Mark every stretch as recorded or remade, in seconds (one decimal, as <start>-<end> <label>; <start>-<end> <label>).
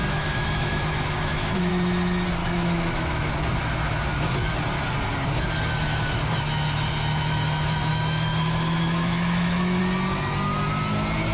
0.0-1.7 remade; 1.7-2.4 recorded; 2.4-3.3 remade; 3.3-7.9 recorded; 7.9-9.8 remade; 9.8-11.3 recorded